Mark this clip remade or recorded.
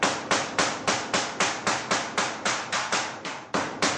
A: recorded